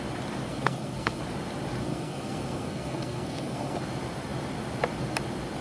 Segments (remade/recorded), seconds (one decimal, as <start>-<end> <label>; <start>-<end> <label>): 0.0-0.5 recorded; 0.5-1.2 remade; 1.2-1.8 recorded; 1.8-3.8 remade; 3.8-5.6 recorded